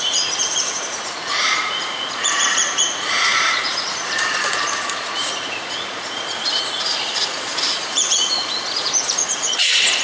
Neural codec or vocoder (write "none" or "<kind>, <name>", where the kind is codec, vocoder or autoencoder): vocoder, Vocos